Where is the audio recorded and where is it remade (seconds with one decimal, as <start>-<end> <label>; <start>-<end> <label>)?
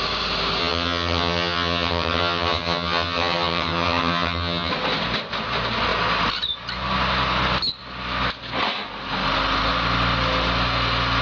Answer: 0.0-0.6 recorded; 0.6-4.7 remade; 4.7-11.2 recorded